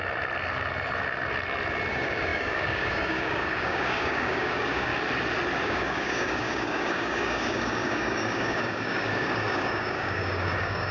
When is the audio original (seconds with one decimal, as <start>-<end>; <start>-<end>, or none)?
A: 0.0-1.9; 4.9-5.6